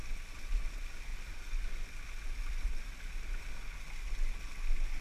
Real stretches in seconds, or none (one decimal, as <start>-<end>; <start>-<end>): 0.0-5.0

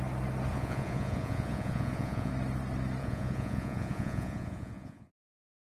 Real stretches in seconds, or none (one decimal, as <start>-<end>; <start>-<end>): 0.0-0.5; 2.3-3.0; 5.1-5.7

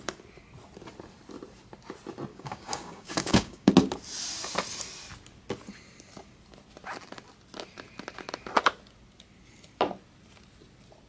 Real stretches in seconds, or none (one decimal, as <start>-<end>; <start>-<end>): 0.0-2.3; 3.7-11.1

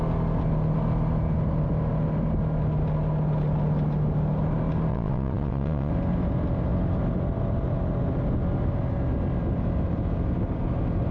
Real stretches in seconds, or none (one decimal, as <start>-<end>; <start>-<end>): 0.0-4.9; 5.9-11.1

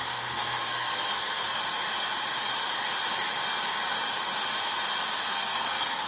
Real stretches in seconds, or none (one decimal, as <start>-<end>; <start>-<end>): 1.6-5.3

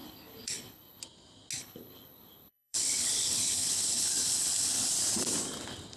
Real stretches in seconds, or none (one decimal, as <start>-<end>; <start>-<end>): 1.0-1.6; 4.9-6.0